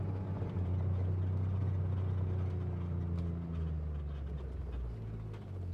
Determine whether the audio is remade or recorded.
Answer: recorded